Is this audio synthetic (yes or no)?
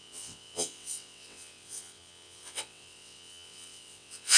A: yes